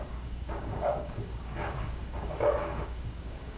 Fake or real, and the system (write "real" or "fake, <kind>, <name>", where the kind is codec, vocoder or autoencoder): fake, codec, DAC